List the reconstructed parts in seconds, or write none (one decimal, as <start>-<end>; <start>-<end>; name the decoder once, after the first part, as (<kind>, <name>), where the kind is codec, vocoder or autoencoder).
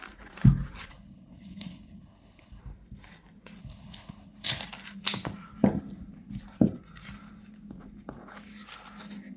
0.9-2.6 (codec, HILCodec); 3.6-4.6